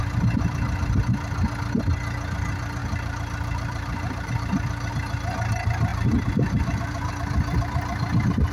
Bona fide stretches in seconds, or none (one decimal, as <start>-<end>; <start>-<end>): 0.0-2.8; 4.9-5.9; 7.1-8.5